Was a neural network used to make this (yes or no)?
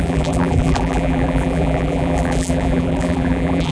yes